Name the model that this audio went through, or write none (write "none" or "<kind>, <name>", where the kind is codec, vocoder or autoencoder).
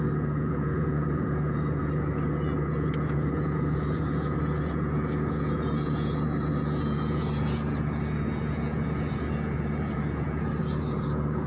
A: vocoder, Vocos